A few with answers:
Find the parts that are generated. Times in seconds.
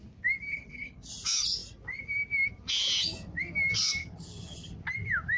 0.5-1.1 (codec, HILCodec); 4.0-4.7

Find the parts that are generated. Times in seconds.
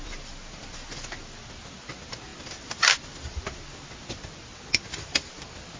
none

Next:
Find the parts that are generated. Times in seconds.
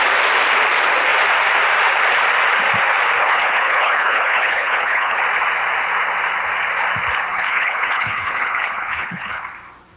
3.2-5.2 (codec, HILCodec); 7.3-9.4